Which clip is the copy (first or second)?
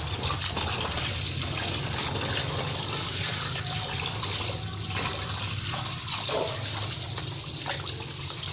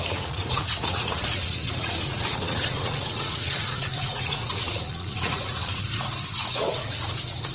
second